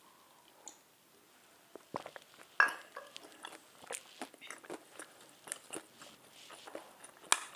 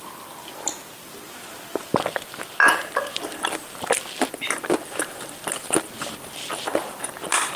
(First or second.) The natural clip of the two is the first